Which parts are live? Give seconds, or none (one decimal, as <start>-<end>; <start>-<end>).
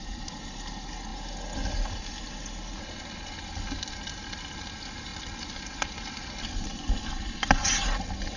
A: 0.0-8.4